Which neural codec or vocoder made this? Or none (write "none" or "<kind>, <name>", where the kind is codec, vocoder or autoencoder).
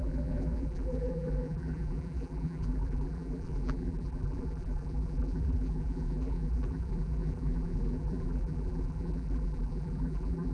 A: vocoder, BigVGAN v2